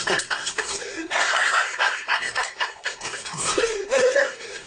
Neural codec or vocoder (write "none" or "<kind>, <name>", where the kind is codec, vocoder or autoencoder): codec, SNAC